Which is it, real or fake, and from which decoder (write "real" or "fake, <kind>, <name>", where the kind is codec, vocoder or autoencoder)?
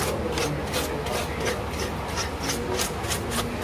real